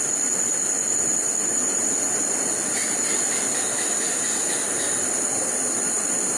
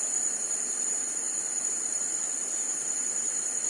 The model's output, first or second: second